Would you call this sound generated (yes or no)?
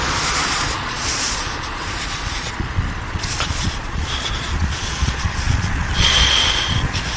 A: yes